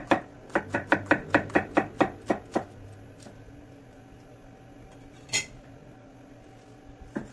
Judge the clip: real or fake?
real